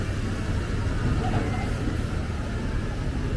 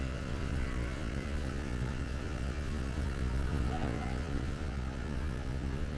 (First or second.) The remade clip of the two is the second